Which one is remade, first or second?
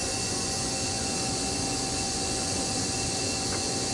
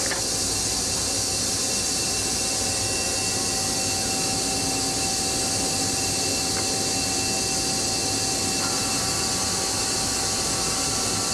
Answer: first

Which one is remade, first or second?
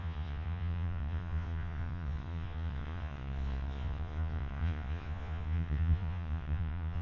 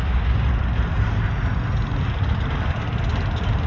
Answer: first